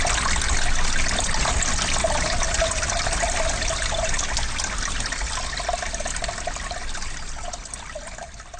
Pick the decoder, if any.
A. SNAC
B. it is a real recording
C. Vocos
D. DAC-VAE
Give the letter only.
B